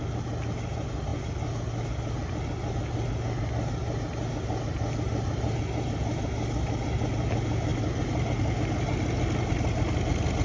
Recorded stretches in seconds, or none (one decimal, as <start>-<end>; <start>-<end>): 0.0-10.4